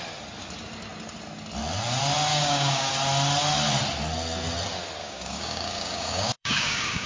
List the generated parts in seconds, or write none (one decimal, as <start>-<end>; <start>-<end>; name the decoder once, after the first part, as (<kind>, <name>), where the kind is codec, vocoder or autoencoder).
2.3-2.9 (codec, DAC); 5.0-7.1